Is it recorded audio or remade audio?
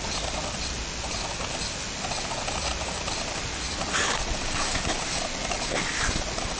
recorded